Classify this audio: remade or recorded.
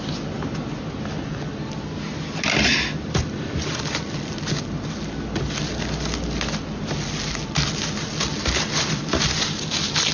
recorded